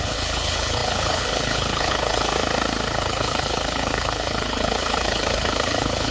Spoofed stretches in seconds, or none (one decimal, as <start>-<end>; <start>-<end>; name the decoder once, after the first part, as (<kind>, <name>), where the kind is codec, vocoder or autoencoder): 0.0-2.3 (codec, HILCodec); 2.9-6.1